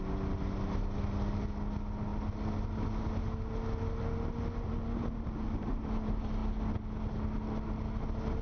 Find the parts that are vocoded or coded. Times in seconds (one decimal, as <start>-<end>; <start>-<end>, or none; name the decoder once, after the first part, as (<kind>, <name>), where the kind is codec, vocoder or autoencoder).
none